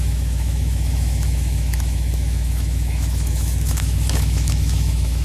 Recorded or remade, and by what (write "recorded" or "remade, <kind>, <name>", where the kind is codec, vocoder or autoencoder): remade, autoencoder, DAC-VAE